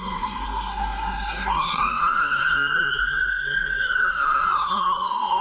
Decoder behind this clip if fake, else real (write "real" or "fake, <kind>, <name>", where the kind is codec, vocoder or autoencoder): fake, codec, SNAC